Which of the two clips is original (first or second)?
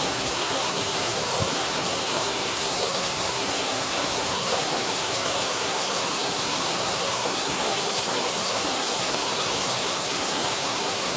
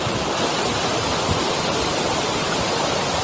second